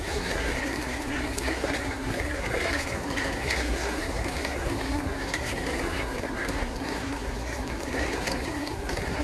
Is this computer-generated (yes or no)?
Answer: yes